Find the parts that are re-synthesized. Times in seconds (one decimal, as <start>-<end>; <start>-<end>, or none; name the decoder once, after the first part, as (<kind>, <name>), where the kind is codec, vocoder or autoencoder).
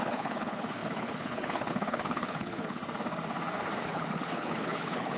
0.0-2.8 (codec, HILCodec); 3.8-5.2